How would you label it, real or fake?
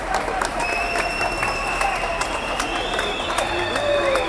fake